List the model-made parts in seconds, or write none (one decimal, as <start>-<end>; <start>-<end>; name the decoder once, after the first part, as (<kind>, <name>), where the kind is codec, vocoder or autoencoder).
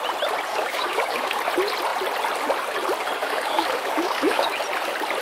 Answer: 0.5-1.4 (codec, DAC); 3.2-4.6